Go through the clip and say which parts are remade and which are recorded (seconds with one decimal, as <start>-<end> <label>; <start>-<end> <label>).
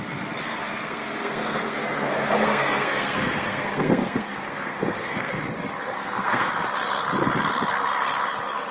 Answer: 0.0-0.6 recorded; 0.6-5.4 remade; 5.4-5.9 recorded; 5.9-6.5 remade; 6.5-8.7 recorded